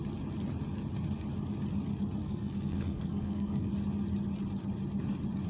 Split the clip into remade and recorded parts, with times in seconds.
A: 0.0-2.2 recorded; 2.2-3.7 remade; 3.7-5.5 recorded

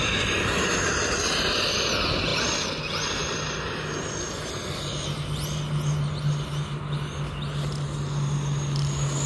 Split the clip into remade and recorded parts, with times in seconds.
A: 0.0-9.3 recorded